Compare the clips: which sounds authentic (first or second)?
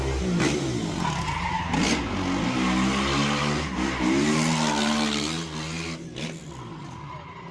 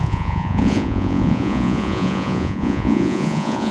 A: first